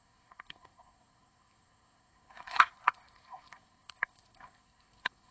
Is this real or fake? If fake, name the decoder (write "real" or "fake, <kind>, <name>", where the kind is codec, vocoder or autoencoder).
fake, codec, SNAC